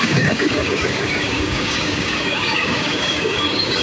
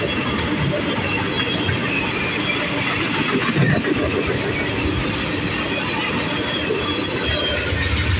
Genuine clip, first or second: second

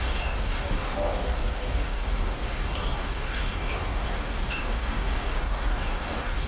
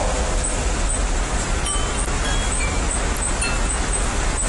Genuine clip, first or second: second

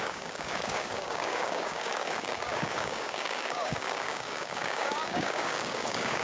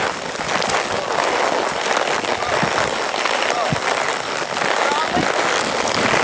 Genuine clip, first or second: second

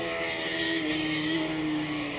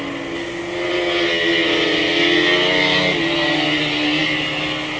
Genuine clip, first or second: second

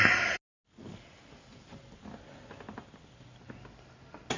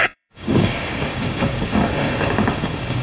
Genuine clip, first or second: first